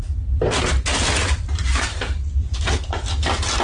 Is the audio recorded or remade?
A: recorded